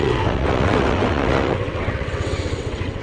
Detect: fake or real fake